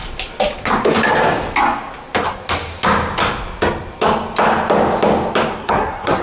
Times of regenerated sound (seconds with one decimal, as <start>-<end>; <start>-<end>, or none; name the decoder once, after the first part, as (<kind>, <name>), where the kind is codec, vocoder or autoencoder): 5.5-6.2 (codec, SNAC)